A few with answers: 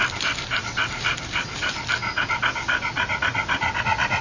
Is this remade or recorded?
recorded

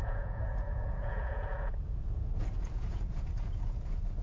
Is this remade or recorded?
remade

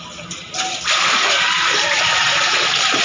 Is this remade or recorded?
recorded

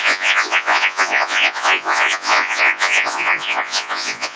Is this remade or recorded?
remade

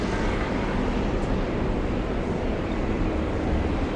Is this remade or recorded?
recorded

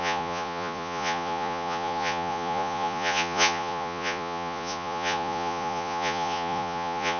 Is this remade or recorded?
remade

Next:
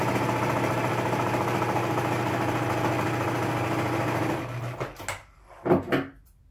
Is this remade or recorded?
recorded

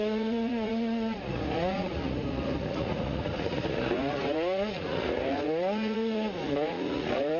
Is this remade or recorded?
remade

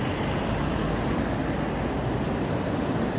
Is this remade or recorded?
recorded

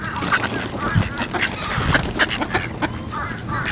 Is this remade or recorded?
recorded